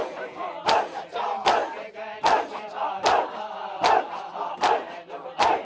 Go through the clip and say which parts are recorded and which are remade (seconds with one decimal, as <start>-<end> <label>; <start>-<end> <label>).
0.0-5.6 recorded